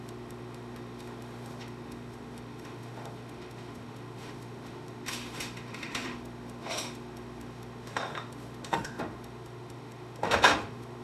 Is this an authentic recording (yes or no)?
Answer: no